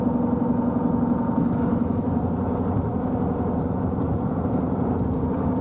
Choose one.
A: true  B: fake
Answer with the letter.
A